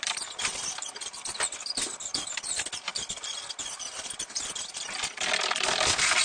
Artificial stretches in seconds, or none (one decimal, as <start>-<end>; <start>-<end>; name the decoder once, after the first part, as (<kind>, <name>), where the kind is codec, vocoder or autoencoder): none